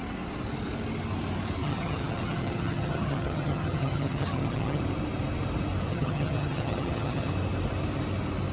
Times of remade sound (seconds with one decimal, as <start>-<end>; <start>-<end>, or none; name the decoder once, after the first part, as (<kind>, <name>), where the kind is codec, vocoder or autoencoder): 1.6-4.8 (vocoder, HiFi-GAN); 5.9-7.3